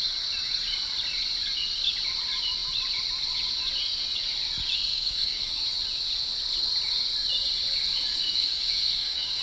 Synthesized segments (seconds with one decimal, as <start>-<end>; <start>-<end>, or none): 4.9-5.6; 8.1-9.4